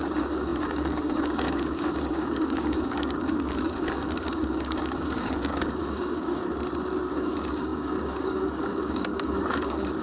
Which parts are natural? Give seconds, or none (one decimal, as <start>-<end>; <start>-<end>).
6.4-7.1